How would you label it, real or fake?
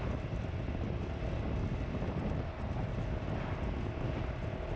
real